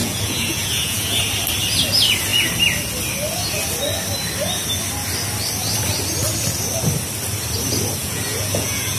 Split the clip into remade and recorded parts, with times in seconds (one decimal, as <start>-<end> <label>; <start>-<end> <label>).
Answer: 0.0-1.2 remade; 1.2-8.0 recorded; 8.0-9.0 remade